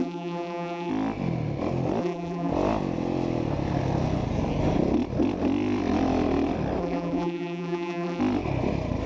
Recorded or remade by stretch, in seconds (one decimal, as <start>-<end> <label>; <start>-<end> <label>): 0.0-0.9 remade; 0.9-2.0 recorded; 2.0-2.5 remade; 2.5-6.8 recorded; 6.8-8.2 remade; 8.2-9.1 recorded